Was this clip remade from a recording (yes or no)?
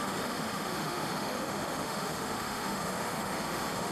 yes